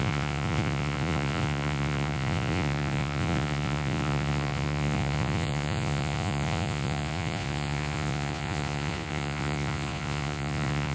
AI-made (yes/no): yes